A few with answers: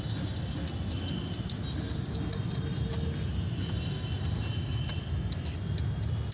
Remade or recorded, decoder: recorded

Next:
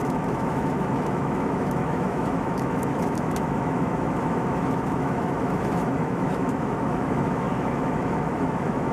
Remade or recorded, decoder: remade, autoencoder, DAC-VAE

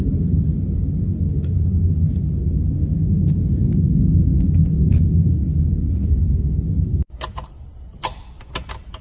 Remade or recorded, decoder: recorded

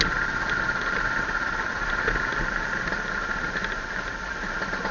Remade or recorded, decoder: recorded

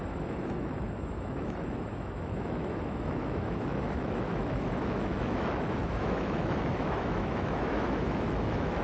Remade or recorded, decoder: remade, autoencoder, DAC-VAE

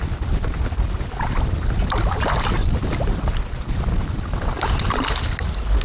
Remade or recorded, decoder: recorded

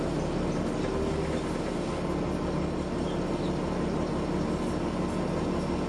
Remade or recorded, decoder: recorded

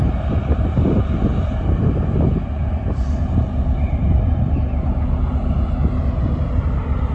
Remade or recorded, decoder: recorded